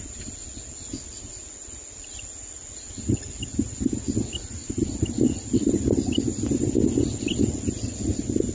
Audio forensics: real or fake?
real